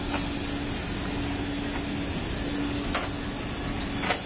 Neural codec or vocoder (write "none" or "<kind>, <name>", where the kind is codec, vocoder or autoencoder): none